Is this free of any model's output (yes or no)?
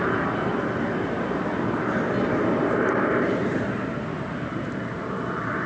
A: no